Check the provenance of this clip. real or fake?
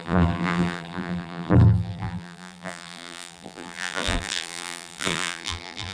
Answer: fake